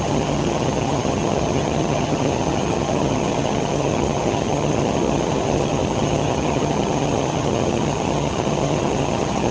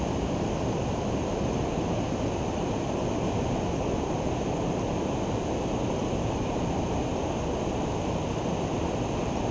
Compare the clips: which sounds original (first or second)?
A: second